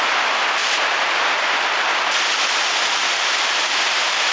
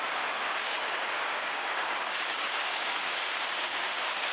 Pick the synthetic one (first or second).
second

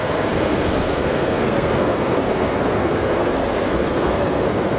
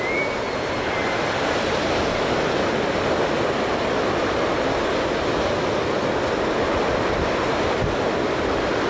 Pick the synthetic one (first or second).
first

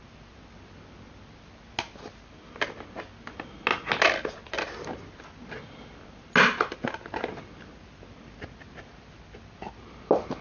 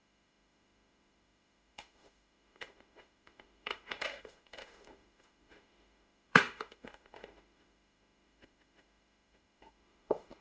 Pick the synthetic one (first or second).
second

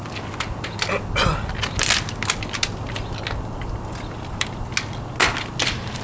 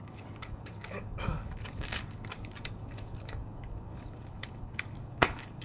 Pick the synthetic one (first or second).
second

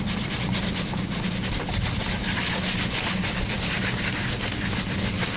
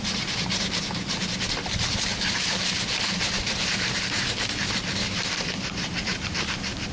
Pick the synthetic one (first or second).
second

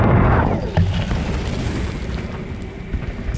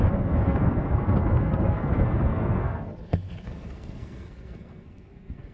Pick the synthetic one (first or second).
second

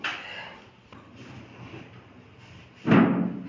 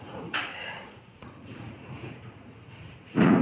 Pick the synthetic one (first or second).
second